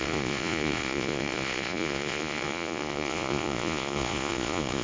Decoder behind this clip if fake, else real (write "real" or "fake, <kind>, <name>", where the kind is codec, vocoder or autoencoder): fake, vocoder, Vocos